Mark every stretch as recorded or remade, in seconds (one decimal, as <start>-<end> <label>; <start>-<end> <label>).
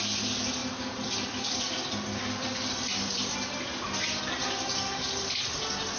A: 0.0-0.6 recorded; 0.6-4.2 remade; 4.2-6.0 recorded